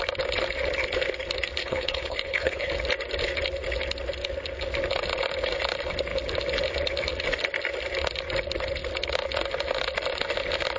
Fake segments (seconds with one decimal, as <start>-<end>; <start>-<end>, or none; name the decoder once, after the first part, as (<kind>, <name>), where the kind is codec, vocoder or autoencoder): 1.6-2.7 (codec, HILCodec)